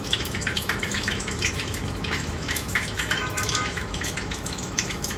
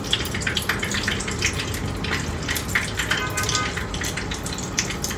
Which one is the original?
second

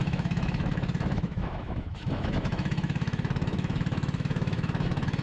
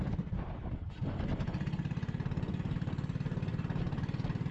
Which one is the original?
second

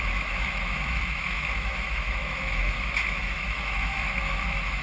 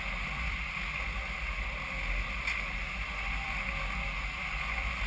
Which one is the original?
second